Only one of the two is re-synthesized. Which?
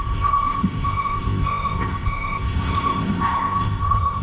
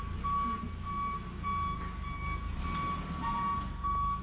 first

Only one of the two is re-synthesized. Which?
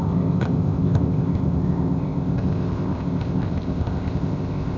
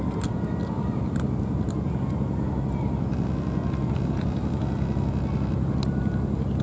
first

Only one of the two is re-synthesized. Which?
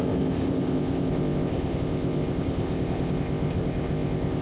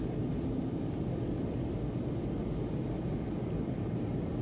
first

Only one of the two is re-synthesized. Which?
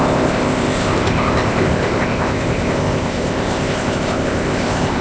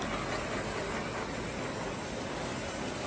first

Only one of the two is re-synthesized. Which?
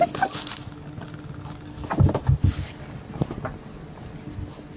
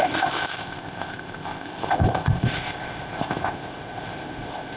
second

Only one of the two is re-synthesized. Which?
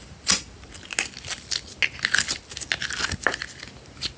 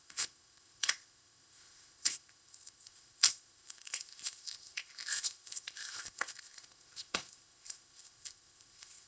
second